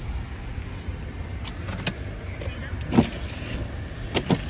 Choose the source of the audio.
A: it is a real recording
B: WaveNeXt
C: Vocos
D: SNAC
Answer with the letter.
A